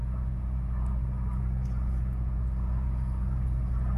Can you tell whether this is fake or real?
fake